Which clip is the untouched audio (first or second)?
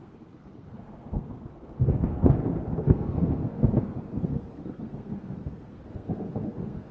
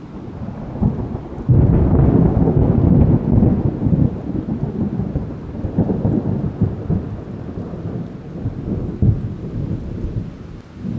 second